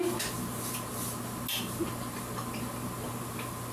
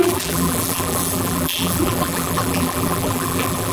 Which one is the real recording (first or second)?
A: first